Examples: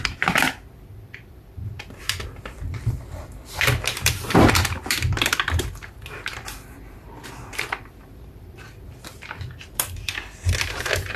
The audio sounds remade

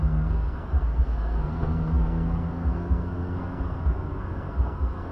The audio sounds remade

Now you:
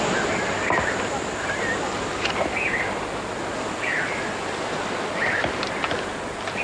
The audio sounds remade